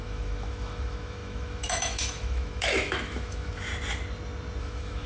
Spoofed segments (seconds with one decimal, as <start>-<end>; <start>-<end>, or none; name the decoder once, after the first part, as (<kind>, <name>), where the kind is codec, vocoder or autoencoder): 0.0-3.7 (autoencoder, DAC-VAE); 4.6-5.1